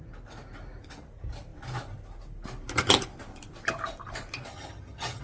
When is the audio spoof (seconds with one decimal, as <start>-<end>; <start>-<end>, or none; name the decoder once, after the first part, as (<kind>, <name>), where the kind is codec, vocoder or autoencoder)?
4.5-5.2 (vocoder, HiFi-GAN)